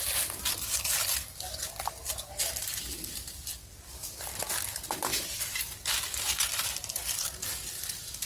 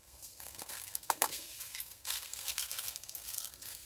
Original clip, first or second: first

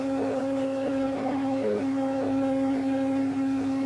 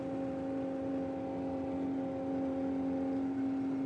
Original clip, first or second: second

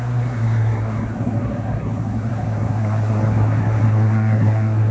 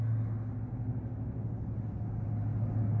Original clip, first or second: second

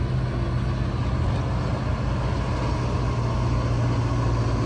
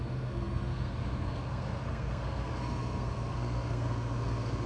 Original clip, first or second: first